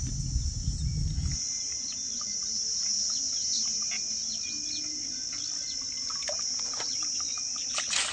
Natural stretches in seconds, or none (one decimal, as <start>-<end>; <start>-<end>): 0.0-8.1